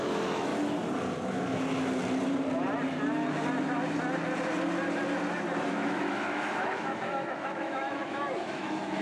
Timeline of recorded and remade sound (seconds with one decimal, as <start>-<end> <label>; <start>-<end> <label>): 0.0-0.5 remade; 0.5-5.7 recorded; 5.7-9.0 remade